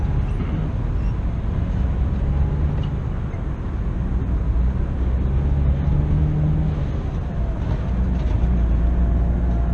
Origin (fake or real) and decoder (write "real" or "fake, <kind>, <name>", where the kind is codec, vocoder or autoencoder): real